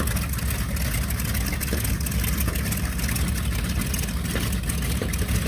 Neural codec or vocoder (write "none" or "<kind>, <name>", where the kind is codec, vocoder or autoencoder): none